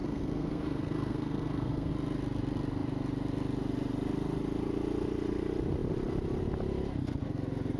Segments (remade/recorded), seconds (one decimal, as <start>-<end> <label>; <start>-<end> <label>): 0.0-1.9 remade; 1.9-7.8 recorded